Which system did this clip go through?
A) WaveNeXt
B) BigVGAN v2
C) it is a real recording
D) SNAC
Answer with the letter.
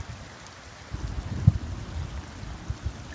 C